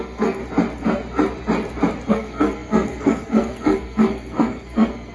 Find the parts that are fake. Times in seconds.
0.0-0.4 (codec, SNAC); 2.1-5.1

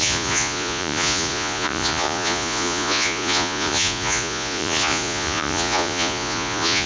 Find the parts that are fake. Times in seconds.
0.0-6.9 (vocoder, Vocos)

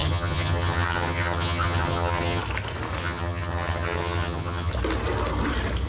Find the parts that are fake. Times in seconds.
0.0-2.4 (vocoder, HiFi-GAN); 3.0-4.7

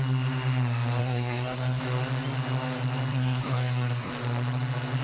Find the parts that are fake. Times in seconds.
1.0-1.8 (codec, SNAC); 3.1-4.1

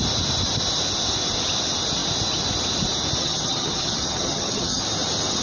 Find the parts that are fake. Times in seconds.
3.2-4.8 (vocoder, HiFi-GAN)

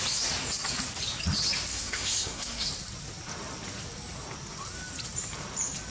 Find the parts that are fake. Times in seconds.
1.7-2.7 (codec, SNAC)

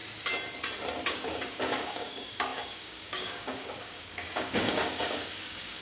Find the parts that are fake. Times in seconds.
1.1-5.8 (codec, DAC)

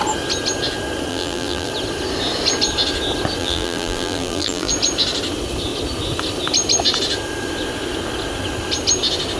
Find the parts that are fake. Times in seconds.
1.1-1.7 (vocoder, BigVGAN v2); 3.4-4.7